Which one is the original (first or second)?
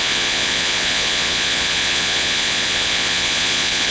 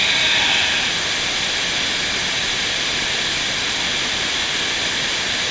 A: second